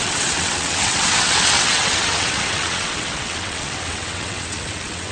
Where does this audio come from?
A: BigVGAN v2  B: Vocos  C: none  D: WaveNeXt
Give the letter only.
D